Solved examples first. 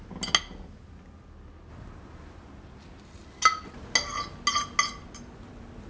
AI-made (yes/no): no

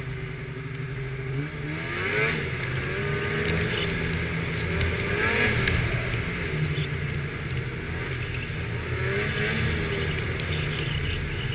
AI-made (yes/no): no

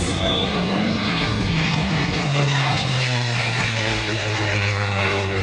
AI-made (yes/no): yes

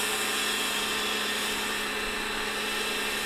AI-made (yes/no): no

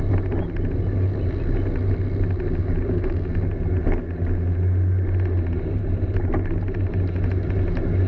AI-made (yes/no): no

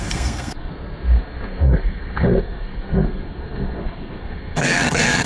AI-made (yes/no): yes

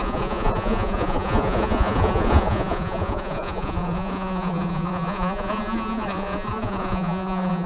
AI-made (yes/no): yes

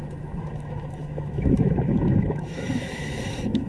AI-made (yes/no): yes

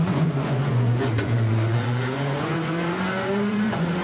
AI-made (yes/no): yes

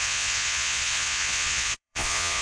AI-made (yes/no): yes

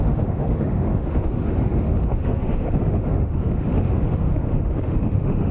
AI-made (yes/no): yes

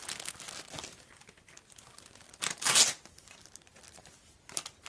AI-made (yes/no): no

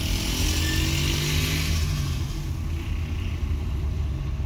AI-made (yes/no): no